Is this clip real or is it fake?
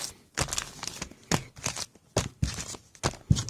real